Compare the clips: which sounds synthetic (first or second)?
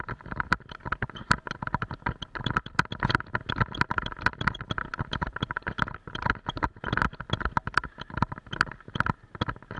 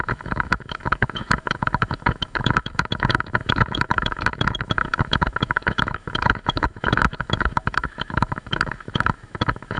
second